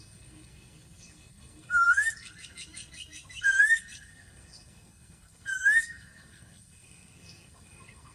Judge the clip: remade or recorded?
remade